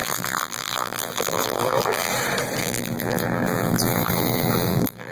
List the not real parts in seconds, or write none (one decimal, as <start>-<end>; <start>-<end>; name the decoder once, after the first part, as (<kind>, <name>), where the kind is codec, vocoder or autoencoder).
0.0-2.1 (vocoder, BigVGAN v2); 2.6-5.1